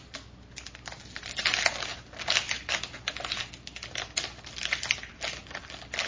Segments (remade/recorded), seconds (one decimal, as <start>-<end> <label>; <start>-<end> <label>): 0.0-1.9 recorded; 1.9-3.1 remade; 3.1-6.1 recorded